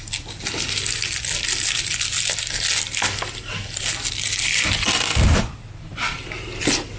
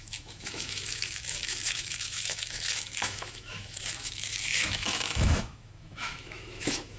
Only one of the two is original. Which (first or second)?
first